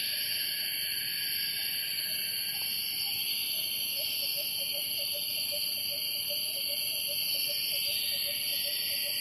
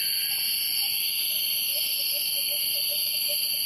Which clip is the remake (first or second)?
first